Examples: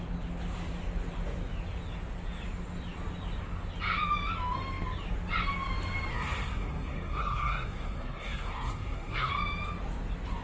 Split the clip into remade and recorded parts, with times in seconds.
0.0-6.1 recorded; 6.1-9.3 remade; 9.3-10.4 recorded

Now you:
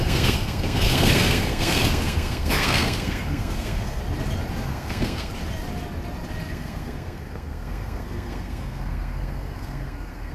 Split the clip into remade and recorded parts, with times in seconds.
0.0-4.0 remade; 4.0-4.7 recorded; 4.7-5.3 remade; 5.3-6.5 recorded; 6.5-10.3 remade

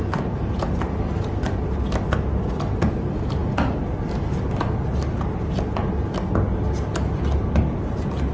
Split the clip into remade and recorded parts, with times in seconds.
0.0-8.3 recorded

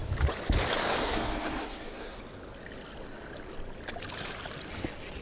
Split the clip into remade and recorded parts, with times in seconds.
0.0-1.0 recorded; 1.0-2.2 remade; 2.2-5.2 recorded

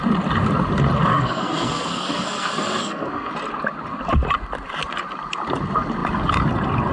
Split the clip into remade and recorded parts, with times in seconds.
0.0-1.1 recorded; 1.1-3.3 remade; 3.3-6.9 recorded